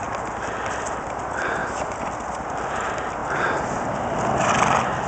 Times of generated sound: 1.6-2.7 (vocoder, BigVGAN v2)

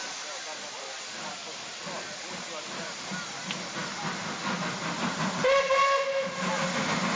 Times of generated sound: 5.0-6.3 (vocoder, BigVGAN v2)

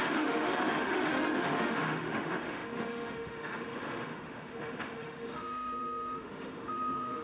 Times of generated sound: 0.0-7.2 (autoencoder, DAC-VAE)

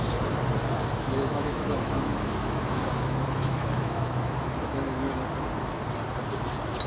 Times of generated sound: 1.3-5.1 (autoencoder, DAC-VAE)